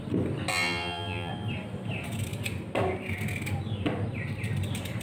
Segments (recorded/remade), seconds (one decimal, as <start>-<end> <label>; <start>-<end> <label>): 0.0-0.5 recorded; 0.5-1.3 remade; 1.3-5.0 recorded